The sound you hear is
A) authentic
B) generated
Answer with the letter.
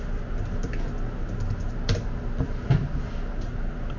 A